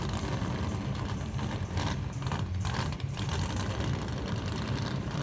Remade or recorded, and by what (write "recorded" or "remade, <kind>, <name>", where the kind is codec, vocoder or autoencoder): remade, vocoder, BigVGAN v2